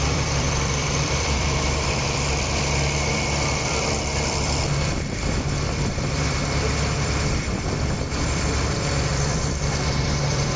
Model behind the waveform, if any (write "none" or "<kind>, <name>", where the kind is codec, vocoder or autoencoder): vocoder, BigVGAN v2